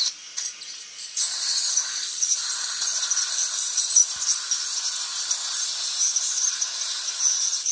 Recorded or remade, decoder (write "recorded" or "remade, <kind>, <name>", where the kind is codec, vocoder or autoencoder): recorded